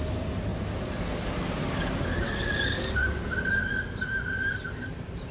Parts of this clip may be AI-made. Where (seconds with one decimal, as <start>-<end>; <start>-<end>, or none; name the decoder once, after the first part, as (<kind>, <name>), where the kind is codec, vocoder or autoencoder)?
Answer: none